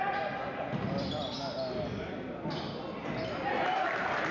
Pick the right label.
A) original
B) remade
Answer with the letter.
B